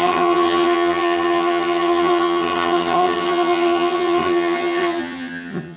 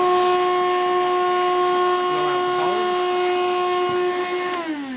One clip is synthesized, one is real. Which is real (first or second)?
second